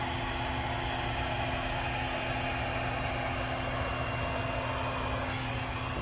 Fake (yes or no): no